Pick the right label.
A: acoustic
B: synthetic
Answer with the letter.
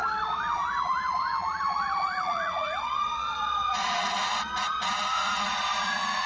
B